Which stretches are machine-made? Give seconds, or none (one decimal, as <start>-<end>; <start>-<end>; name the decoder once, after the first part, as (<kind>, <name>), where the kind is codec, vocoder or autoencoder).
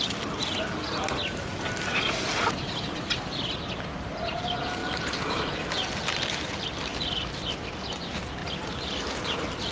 4.8-5.9 (vocoder, BigVGAN v2)